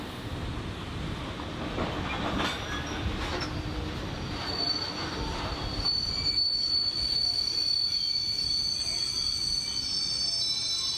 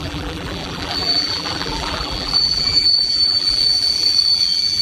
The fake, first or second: second